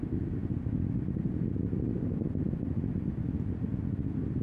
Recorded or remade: recorded